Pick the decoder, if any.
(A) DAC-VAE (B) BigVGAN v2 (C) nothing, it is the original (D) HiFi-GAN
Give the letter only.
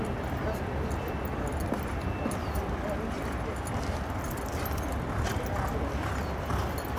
C